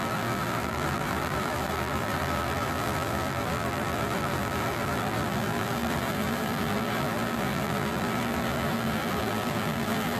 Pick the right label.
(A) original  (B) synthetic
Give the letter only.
B